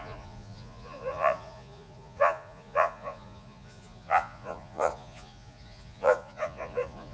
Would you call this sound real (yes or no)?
no